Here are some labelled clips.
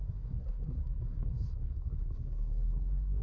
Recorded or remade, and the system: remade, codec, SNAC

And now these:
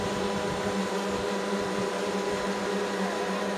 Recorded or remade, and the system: recorded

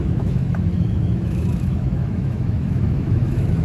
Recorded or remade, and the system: remade, autoencoder, DAC-VAE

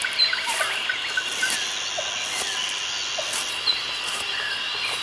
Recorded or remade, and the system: recorded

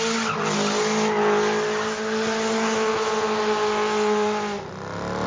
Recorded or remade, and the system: recorded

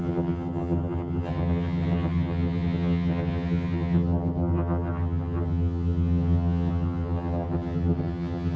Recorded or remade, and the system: remade, vocoder, HiFi-GAN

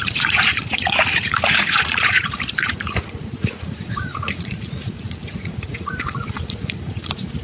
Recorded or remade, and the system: remade, vocoder, Vocos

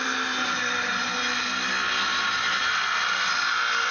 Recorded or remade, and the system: recorded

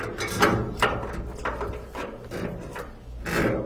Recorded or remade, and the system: recorded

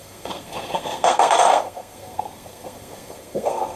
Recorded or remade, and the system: remade, codec, SNAC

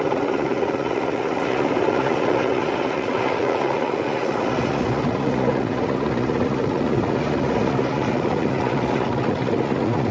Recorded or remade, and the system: remade, vocoder, Vocos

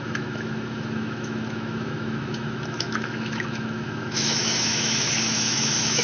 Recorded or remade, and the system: remade, autoencoder, DAC-VAE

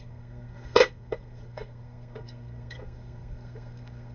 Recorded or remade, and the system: remade, codec, SNAC